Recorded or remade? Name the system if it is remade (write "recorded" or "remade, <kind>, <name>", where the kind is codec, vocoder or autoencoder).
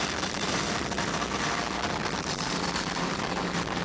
remade, vocoder, BigVGAN v2